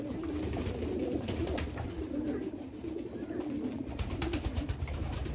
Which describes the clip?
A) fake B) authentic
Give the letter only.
A